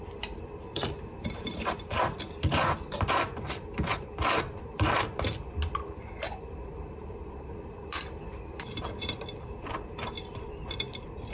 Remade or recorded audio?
remade